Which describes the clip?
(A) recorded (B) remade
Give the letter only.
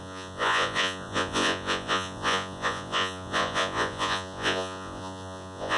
B